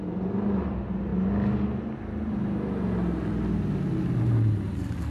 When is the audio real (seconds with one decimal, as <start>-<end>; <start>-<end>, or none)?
0.0-5.1